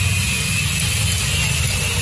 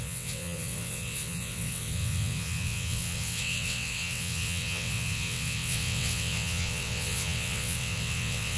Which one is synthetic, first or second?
second